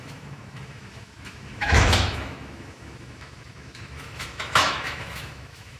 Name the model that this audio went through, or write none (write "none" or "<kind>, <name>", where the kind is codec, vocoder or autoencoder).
autoencoder, DAC-VAE